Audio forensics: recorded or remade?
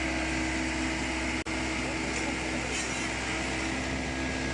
recorded